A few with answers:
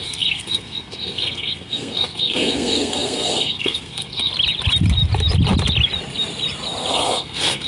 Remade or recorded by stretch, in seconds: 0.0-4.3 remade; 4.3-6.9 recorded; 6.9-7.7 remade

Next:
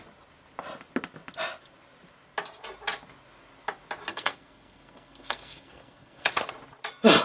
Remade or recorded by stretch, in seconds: 0.0-4.1 recorded; 4.1-6.3 remade; 6.3-7.2 recorded

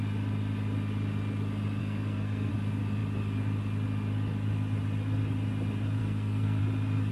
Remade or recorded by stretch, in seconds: 0.0-1.8 recorded; 1.8-2.5 remade; 2.5-6.0 recorded; 6.0-6.6 remade; 6.6-7.1 recorded